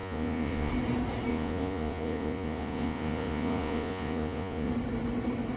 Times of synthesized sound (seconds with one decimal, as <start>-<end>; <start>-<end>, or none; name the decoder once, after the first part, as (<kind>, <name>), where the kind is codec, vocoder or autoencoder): 0.0-0.7 (vocoder, Vocos); 1.3-4.7